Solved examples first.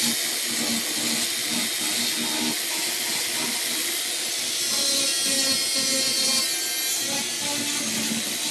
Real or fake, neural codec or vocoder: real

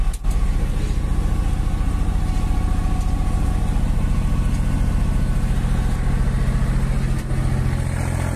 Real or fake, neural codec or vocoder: real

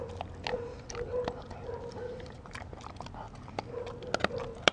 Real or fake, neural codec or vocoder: real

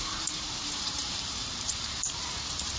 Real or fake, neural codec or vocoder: fake, vocoder, BigVGAN v2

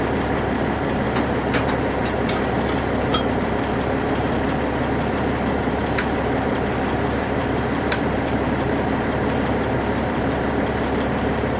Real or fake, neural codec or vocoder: fake, vocoder, BigVGAN v2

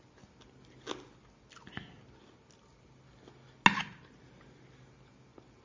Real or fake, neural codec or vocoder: real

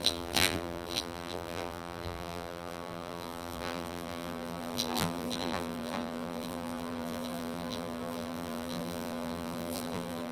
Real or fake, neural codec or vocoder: fake, vocoder, BigVGAN v2